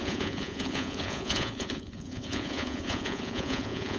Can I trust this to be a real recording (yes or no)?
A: no